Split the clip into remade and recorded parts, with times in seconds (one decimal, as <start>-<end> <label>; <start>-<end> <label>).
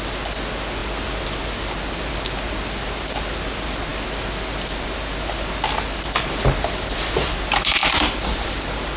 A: 0.0-9.0 recorded